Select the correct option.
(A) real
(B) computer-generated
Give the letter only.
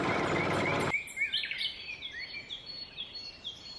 B